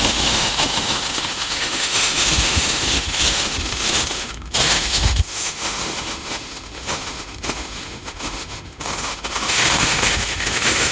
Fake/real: fake